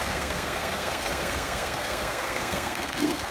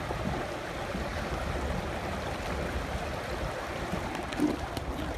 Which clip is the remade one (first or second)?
first